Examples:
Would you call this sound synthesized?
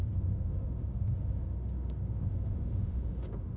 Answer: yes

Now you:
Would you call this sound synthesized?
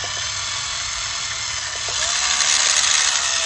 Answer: no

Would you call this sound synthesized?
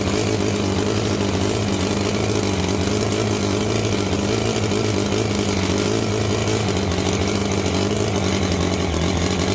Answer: no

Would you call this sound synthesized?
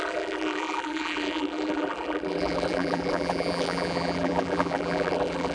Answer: yes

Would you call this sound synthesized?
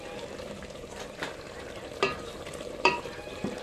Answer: yes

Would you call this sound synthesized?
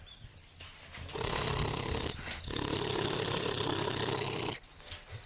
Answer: no